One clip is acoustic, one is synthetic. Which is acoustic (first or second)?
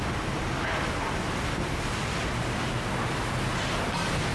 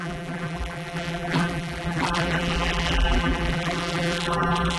first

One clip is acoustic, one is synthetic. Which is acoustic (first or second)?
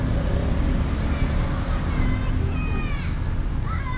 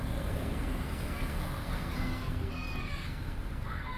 first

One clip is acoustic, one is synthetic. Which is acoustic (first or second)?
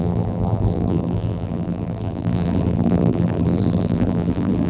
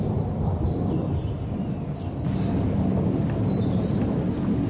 second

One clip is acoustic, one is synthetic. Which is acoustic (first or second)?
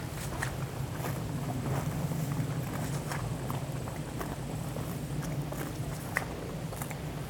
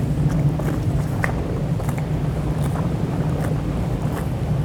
first